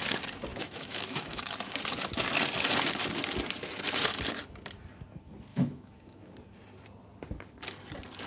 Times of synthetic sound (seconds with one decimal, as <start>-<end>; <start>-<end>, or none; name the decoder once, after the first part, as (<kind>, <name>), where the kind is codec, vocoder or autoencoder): 0.5-1.4 (autoencoder, DAC-VAE); 5.5-6.3